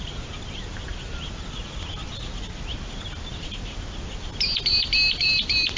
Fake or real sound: real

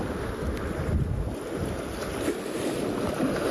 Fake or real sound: real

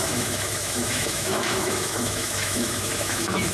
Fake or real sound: fake